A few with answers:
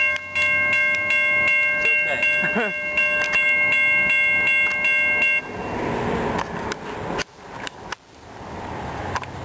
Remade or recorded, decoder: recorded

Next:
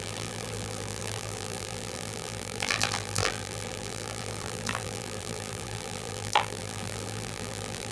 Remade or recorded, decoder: remade, vocoder, BigVGAN v2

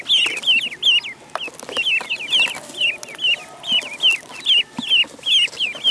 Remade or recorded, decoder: recorded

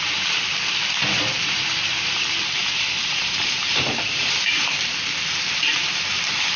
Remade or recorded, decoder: remade, vocoder, BigVGAN v2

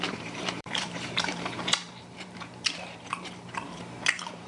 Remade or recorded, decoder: remade, vocoder, BigVGAN v2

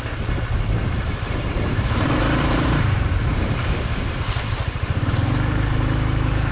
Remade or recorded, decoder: remade, vocoder, BigVGAN v2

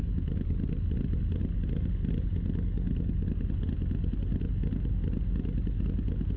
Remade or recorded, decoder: recorded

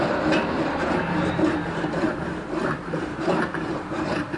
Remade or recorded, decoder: remade, vocoder, BigVGAN v2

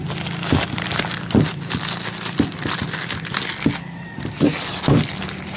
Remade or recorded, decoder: recorded